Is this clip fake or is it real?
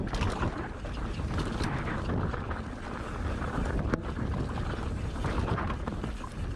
real